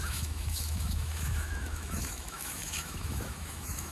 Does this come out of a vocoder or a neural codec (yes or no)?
yes